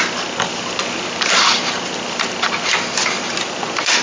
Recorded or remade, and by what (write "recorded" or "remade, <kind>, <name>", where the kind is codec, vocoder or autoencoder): recorded